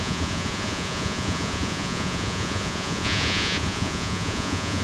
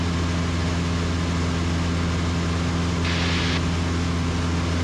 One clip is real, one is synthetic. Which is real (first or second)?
second